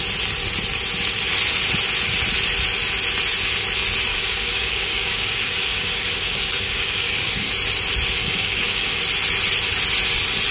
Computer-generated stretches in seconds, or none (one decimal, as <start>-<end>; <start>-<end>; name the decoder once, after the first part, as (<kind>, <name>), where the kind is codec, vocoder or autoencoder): 4.1-7.5 (codec, DAC); 8.2-9.0